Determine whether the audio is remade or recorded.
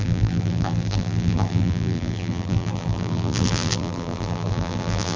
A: remade